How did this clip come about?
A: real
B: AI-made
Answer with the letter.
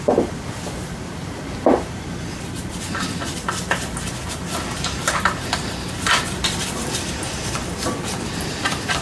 B